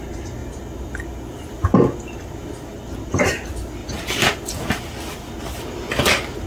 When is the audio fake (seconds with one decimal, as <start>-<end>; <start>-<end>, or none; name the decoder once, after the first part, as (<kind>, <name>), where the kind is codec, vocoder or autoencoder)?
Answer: none